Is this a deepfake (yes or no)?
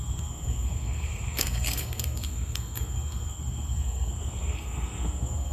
yes